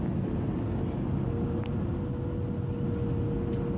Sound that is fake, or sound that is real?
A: real